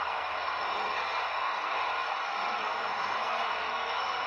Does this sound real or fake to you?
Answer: fake